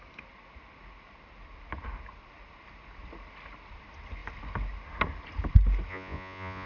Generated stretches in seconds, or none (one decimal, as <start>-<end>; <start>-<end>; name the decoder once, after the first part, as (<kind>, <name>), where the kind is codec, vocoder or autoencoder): 5.9-6.7 (vocoder, Vocos)